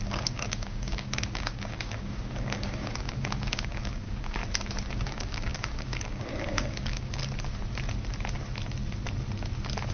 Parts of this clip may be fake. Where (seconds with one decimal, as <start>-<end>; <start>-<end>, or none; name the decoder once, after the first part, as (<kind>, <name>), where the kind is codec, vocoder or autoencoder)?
0.0-4.4 (codec, DAC); 4.9-7.2